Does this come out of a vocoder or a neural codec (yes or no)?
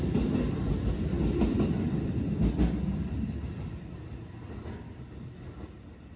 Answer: no